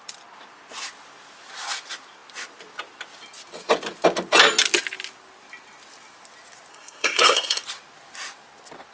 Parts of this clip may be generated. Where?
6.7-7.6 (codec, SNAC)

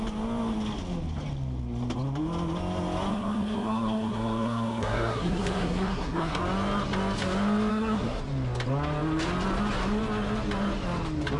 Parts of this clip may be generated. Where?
3.1-6.4 (codec, SNAC); 7.7-8.2

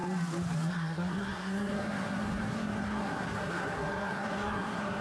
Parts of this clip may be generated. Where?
0.7-5.0 (codec, SNAC)

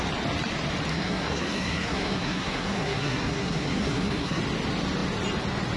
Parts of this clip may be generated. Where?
0.9-4.4 (codec, SNAC)

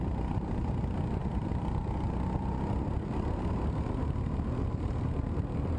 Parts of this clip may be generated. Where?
none

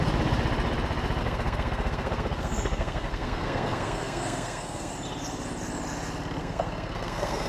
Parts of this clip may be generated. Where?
1.2-4.9 (codec, SNAC); 6.4-7.5

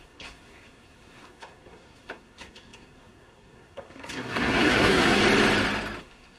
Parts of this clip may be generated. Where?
0.0-5.2 (codec, SNAC); 6.0-6.4